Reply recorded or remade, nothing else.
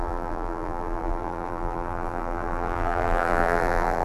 remade